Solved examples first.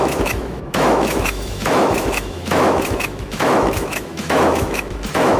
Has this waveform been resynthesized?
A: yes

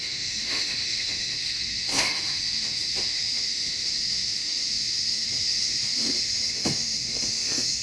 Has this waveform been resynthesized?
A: yes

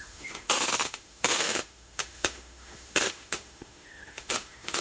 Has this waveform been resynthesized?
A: yes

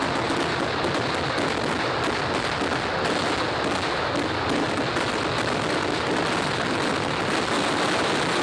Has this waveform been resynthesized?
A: no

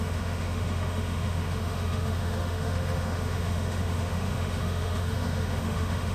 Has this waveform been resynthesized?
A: yes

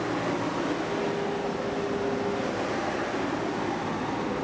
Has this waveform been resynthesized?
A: no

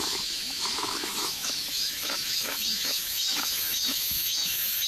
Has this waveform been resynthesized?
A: yes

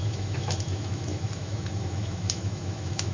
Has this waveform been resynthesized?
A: yes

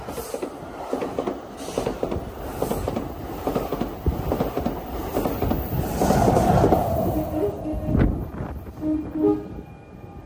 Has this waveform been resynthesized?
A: no